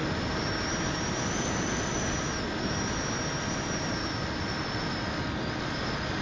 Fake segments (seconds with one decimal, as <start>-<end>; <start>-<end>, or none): none